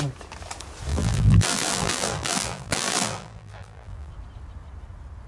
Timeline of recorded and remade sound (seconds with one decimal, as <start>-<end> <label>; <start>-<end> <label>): 0.0-0.9 recorded; 0.9-4.1 remade; 4.1-5.3 recorded

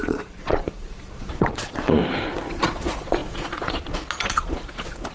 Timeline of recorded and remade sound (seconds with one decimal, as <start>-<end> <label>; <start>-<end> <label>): 0.0-2.0 remade; 2.0-2.5 recorded; 2.5-5.1 remade

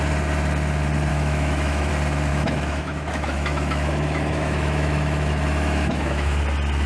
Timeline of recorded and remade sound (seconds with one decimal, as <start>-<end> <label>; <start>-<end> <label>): 0.0-1.1 recorded; 1.1-1.9 remade; 1.9-2.3 recorded; 2.3-6.4 remade; 6.4-6.9 recorded